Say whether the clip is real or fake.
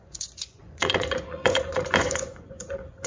fake